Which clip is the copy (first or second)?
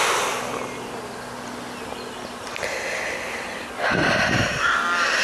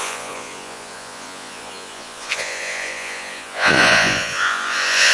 second